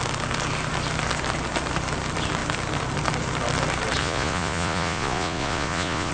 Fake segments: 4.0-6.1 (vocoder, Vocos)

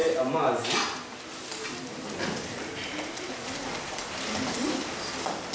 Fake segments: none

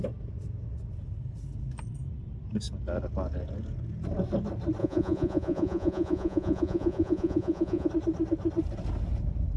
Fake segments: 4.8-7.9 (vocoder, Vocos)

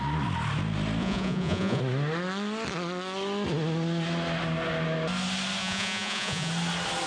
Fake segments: 1.0-1.8 (vocoder, Vocos); 5.6-6.5

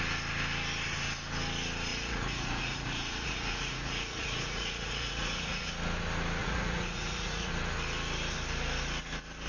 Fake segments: 1.9-5.7 (vocoder, Vocos); 6.4-7.5

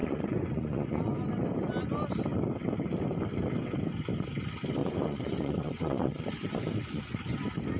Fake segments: 0.0-1.2 (vocoder, Vocos); 4.8-7.0

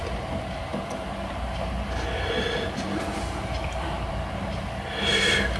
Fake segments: none

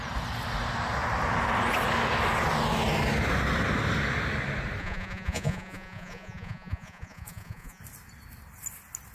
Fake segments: 4.8-7.8 (vocoder, Vocos)